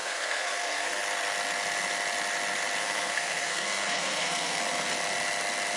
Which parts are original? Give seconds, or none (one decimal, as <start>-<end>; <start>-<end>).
1.0-2.8; 4.6-5.8